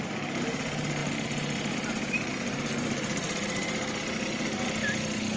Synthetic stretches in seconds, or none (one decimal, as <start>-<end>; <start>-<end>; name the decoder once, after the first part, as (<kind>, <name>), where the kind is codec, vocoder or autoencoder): none